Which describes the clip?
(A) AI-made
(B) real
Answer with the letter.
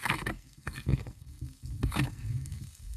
A